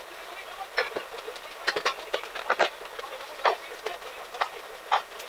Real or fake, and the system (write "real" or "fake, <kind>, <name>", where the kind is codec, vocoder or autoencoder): real